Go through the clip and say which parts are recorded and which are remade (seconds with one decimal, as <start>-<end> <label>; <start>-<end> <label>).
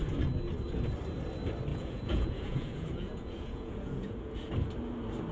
0.0-1.7 recorded; 1.7-4.5 remade; 4.5-5.3 recorded